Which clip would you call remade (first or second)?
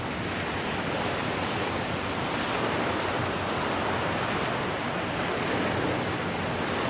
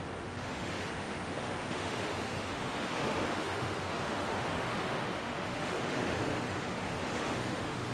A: second